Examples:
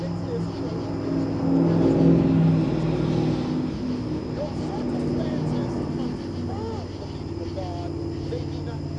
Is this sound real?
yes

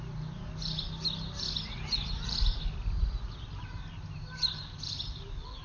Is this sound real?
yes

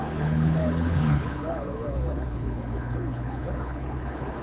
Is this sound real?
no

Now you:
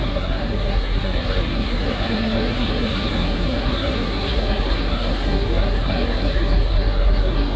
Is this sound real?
no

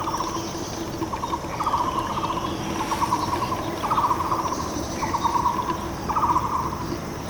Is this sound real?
yes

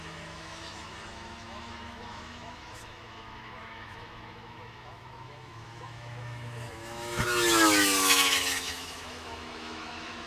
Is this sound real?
no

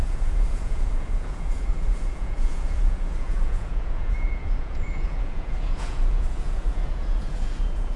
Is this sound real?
no